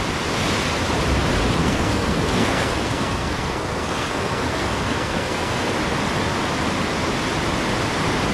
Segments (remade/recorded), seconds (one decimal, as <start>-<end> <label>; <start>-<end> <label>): 0.0-1.6 recorded; 1.6-5.7 remade; 5.7-8.3 recorded